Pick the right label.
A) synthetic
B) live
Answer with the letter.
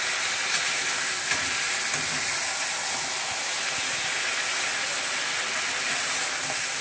B